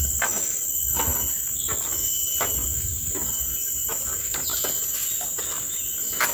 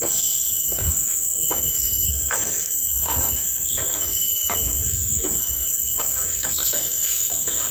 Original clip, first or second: first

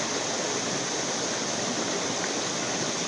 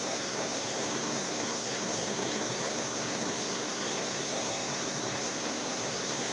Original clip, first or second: first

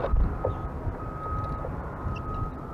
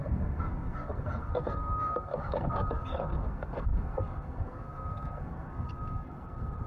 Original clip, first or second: first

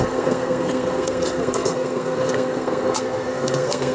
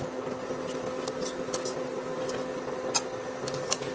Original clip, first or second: second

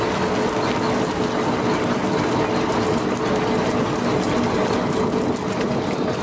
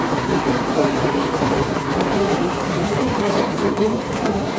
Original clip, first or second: first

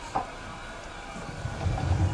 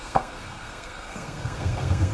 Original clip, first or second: first